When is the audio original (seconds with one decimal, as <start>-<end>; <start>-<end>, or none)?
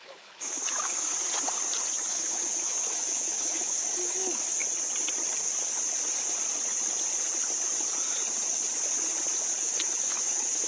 1.1-2.1; 4.6-9.6